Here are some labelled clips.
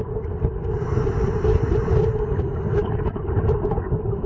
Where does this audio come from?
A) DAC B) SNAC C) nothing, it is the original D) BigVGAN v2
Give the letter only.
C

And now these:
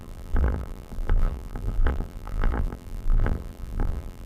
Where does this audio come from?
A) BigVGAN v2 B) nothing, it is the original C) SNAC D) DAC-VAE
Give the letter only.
A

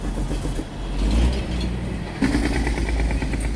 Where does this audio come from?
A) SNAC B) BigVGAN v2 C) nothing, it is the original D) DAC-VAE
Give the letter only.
C